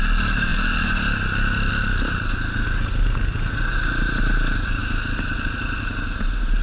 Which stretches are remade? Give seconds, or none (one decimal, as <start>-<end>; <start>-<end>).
none